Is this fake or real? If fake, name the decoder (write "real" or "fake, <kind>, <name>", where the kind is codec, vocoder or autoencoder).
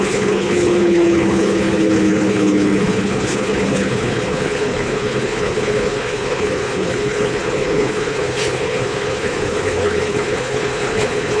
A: fake, codec, HILCodec